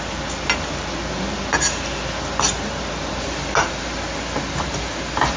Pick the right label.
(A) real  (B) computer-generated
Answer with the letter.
A